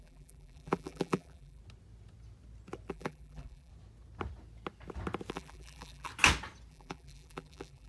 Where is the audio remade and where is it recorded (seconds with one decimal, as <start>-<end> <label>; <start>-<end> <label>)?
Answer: 0.0-1.6 remade; 1.6-2.9 recorded; 2.9-3.7 remade; 3.7-5.3 recorded; 5.3-6.1 remade; 6.1-6.7 recorded; 6.7-7.9 remade